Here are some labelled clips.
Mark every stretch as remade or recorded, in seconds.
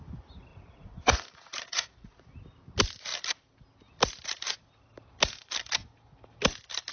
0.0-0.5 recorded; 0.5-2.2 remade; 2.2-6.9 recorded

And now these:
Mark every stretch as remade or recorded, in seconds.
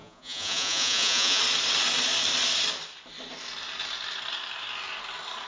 0.0-1.4 remade; 1.4-5.5 recorded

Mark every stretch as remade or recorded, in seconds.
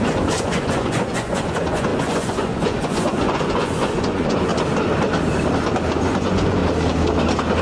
0.0-4.5 remade; 4.5-6.0 recorded; 6.0-6.6 remade; 6.6-7.6 recorded